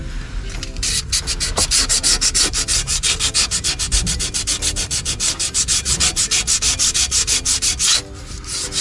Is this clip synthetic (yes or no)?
no